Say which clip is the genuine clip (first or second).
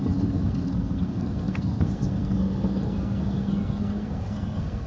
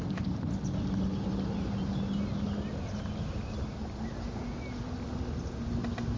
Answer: second